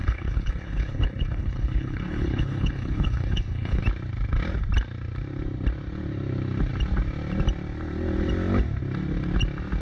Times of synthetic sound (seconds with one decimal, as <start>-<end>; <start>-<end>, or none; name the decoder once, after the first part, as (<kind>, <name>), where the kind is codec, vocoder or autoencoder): 0.0-3.8 (codec, HILCodec)